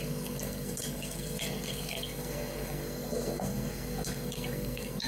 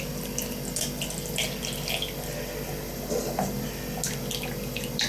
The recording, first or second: second